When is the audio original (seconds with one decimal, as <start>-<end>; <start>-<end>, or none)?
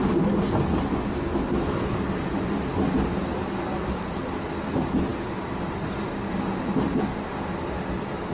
0.0-8.3